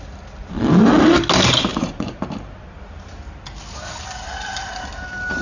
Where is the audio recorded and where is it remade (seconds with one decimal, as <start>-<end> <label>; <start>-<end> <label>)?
0.0-1.7 recorded; 1.7-2.2 remade; 2.2-5.4 recorded